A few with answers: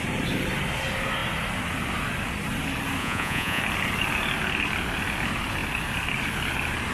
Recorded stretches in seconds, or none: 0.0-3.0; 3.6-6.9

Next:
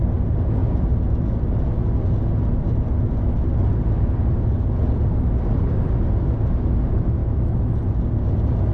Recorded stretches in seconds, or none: 0.0-7.2; 7.7-8.7

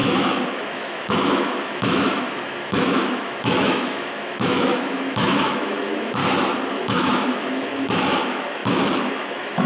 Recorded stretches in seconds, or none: 6.2-6.7

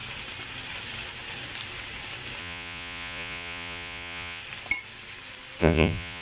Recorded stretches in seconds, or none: 0.0-2.4; 4.4-5.6